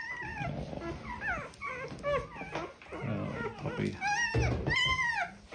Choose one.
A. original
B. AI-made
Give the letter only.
A